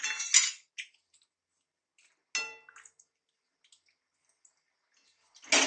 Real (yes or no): yes